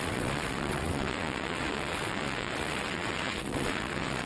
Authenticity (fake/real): fake